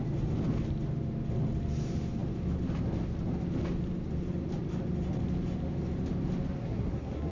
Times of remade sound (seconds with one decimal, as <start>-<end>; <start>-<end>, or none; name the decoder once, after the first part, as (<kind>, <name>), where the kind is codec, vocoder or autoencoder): 6.6-7.3 (codec, SNAC)